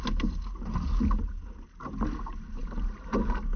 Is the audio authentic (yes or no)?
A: yes